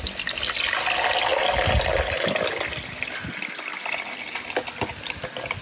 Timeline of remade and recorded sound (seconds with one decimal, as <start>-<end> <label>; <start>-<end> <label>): 0.0-5.6 recorded